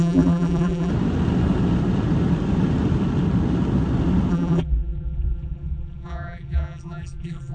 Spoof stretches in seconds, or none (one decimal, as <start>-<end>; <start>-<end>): 0.0-0.9; 4.3-7.5